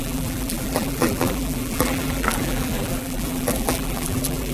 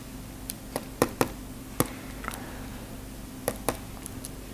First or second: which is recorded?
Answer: second